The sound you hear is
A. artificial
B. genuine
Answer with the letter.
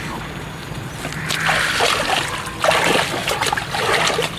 B